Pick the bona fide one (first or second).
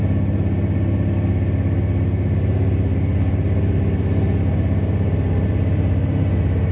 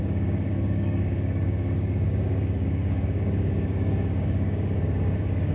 first